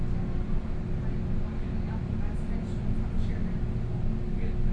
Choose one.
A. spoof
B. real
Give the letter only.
B